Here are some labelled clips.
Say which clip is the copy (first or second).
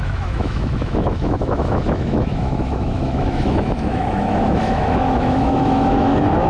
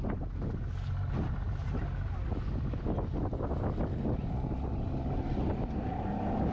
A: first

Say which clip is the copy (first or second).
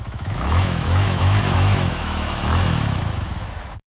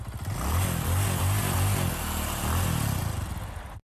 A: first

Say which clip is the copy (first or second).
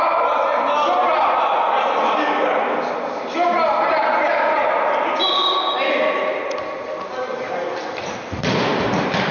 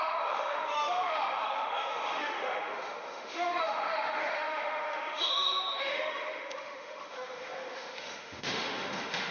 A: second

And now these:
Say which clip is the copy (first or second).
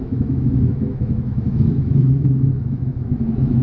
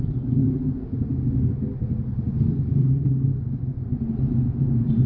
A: first